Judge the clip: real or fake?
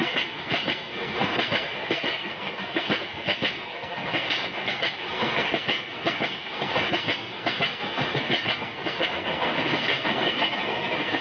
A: fake